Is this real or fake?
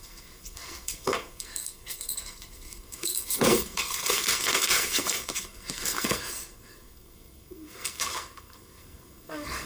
fake